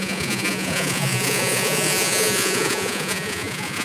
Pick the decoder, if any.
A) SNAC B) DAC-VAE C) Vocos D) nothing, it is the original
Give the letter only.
C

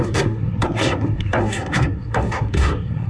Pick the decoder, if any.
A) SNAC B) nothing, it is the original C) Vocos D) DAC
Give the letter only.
A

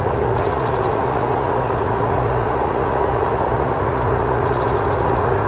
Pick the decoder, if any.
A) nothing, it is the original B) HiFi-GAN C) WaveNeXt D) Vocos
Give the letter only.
D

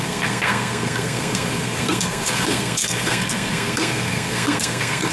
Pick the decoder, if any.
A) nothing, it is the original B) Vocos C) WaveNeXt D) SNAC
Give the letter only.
D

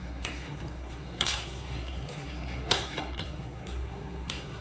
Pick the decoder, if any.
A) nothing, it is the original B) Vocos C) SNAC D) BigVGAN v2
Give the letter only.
C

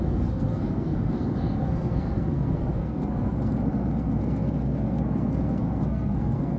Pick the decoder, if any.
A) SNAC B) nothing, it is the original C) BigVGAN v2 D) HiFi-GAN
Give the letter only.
A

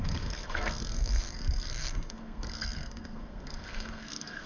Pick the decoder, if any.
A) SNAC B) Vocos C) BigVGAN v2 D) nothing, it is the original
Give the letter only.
A